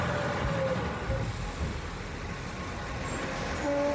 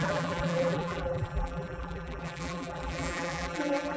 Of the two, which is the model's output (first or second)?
second